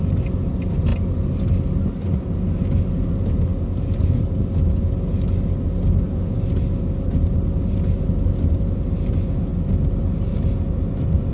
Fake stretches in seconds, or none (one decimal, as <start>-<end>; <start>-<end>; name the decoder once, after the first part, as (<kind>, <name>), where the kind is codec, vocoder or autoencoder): none